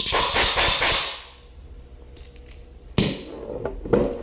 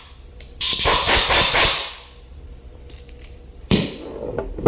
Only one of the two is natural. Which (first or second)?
first